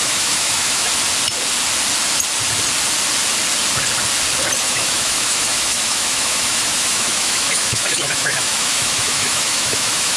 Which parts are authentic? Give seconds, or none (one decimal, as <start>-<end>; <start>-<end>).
0.9-4.6